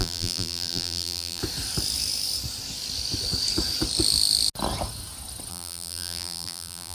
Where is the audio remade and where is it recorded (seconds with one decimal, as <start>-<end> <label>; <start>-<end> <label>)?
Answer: 0.0-1.4 remade; 1.4-5.5 recorded; 5.5-6.9 remade